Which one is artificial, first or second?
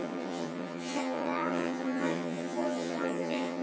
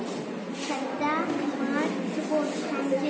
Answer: first